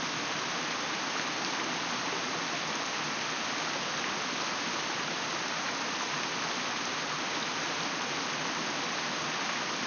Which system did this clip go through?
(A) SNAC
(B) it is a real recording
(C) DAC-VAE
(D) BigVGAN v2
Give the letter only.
B